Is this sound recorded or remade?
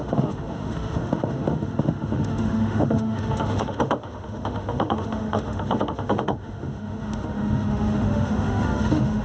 remade